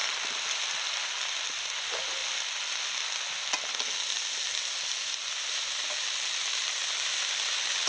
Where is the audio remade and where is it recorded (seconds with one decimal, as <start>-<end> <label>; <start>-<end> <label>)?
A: 0.0-2.2 remade; 2.2-5.5 recorded; 5.5-7.9 remade